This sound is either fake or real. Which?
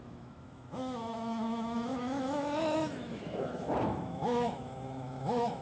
fake